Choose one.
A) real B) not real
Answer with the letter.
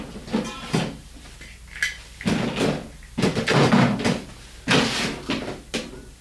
A